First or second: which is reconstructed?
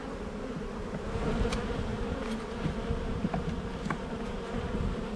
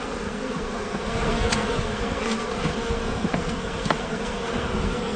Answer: second